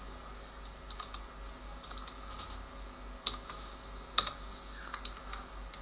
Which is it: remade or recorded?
recorded